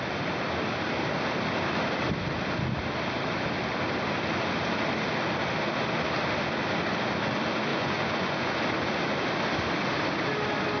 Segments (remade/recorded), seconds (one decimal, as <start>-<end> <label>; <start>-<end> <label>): 0.0-7.7 recorded; 7.7-8.6 remade; 8.6-10.8 recorded